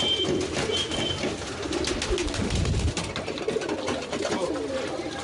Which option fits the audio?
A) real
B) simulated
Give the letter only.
A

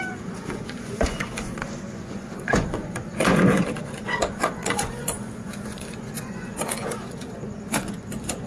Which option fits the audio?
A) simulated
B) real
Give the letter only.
A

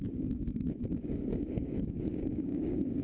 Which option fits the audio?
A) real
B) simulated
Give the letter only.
B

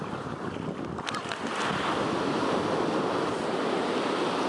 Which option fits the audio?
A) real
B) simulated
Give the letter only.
A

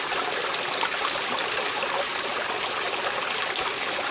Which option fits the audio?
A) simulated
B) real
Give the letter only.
B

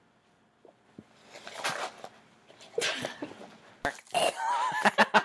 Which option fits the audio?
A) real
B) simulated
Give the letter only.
A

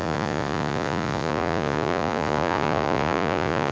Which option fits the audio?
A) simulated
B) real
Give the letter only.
A